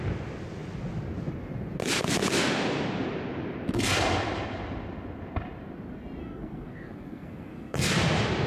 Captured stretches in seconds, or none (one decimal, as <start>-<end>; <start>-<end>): 0.0-6.2; 7.9-8.5